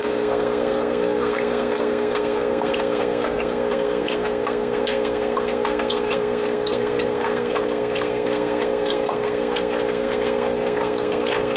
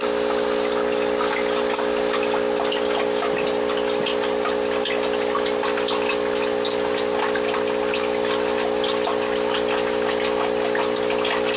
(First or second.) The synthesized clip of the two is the first